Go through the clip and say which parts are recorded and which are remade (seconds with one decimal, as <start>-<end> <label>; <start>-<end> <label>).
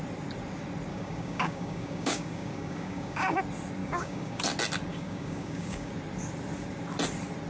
0.0-0.9 recorded; 0.9-3.4 remade; 3.4-3.8 recorded; 3.8-4.4 remade; 4.4-4.9 recorded; 4.9-5.9 remade; 5.9-7.5 recorded